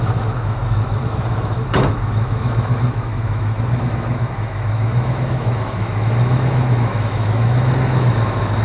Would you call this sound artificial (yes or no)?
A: yes